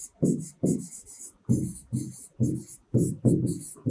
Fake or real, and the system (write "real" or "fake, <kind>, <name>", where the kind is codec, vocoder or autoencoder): real